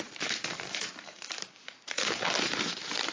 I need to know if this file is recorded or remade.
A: remade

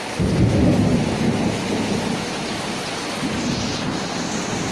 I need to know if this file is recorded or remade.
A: recorded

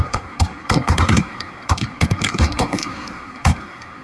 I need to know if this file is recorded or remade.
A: remade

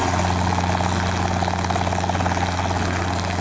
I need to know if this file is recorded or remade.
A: recorded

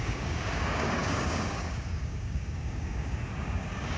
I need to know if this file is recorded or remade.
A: remade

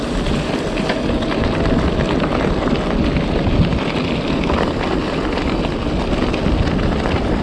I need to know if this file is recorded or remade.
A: recorded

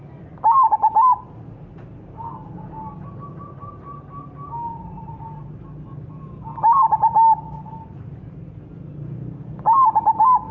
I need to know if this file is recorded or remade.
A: recorded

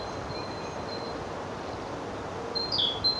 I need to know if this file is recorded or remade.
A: recorded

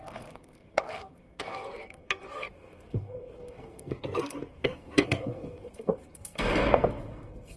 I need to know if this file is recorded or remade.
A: remade